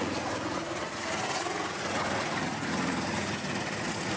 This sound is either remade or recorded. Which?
remade